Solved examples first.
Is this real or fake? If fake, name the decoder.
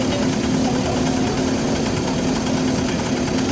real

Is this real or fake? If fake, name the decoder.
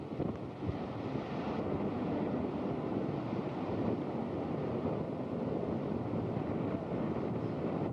real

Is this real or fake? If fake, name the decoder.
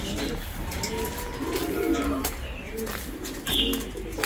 real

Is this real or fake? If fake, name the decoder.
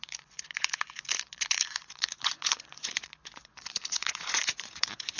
fake, vocoder, Vocos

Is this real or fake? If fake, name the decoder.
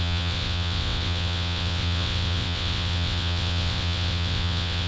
fake, vocoder, WaveNeXt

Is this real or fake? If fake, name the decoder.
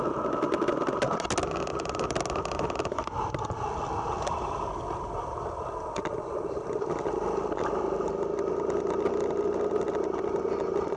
real